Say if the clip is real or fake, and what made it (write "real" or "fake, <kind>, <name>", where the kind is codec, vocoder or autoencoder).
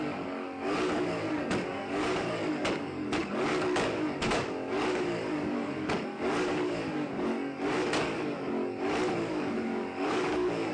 fake, codec, DAC